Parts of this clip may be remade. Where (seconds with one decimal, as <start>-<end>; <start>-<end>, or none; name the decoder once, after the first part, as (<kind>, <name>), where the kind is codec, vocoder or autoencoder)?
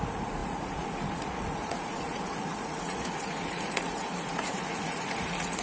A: 0.0-5.6 (vocoder, Vocos)